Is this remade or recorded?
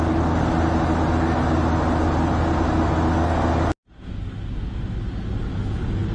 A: recorded